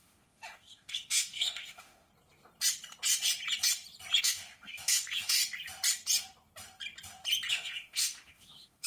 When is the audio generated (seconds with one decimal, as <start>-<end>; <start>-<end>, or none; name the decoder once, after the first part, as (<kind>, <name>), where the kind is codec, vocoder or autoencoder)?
0.0-2.1 (autoencoder, DAC-VAE); 4.2-5.4; 7.5-8.9